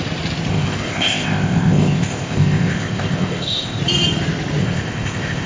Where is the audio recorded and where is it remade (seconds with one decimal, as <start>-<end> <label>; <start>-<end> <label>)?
0.0-0.5 recorded; 0.5-3.8 remade; 3.8-4.6 recorded; 4.6-5.5 remade